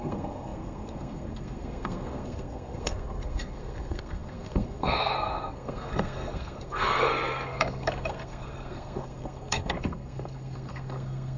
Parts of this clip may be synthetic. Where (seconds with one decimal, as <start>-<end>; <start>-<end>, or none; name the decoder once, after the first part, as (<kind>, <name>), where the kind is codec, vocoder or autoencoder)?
0.0-11.4 (codec, SNAC)